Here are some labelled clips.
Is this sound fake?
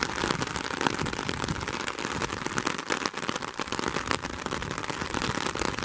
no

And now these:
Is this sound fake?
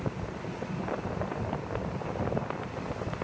no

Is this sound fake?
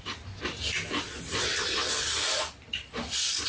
no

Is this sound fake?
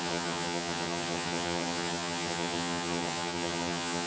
yes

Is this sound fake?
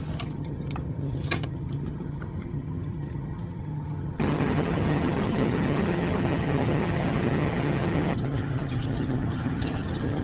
yes